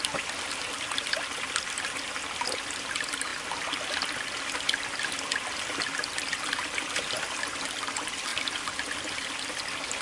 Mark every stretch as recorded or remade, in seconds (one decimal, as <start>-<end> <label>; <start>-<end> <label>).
0.0-10.0 recorded